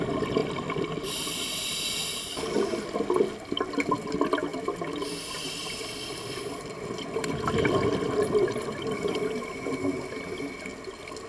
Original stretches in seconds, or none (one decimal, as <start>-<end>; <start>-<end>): 0.0-0.4; 2.2-4.5; 9.2-11.3